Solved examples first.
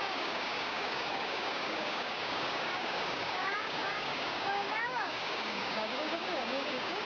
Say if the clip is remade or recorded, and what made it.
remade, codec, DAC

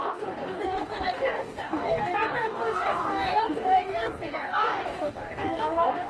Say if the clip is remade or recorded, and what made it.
remade, codec, DAC